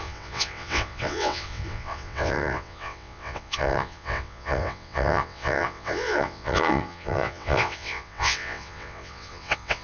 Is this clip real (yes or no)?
no